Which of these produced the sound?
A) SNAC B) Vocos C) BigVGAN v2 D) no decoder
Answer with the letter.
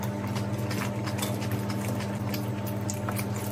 D